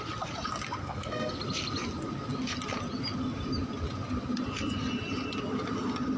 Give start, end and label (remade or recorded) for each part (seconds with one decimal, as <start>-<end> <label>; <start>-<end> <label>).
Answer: 0.0-0.8 recorded; 0.8-1.4 remade; 1.4-6.2 recorded